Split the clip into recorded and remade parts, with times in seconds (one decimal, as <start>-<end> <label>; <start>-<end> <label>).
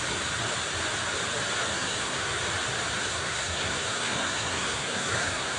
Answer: 0.0-1.7 recorded; 1.7-2.4 remade; 2.4-3.0 recorded; 3.0-5.6 remade